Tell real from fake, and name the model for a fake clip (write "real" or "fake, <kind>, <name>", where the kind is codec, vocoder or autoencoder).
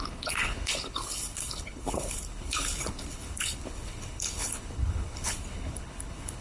fake, codec, HILCodec